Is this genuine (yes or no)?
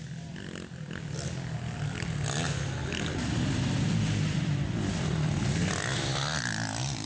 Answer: yes